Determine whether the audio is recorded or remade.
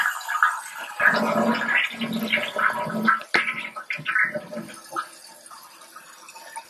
recorded